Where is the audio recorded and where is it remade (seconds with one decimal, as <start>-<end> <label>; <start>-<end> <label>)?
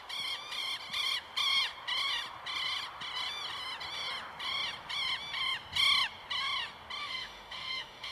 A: 0.0-7.0 recorded; 7.0-8.1 remade